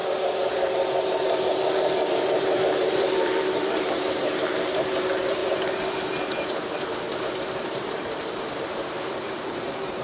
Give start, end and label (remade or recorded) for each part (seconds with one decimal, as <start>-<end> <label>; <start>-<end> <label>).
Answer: 0.0-2.1 recorded; 2.1-5.4 remade; 5.4-7.3 recorded; 7.3-10.0 remade